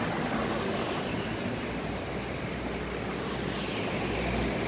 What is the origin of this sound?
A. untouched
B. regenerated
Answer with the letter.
A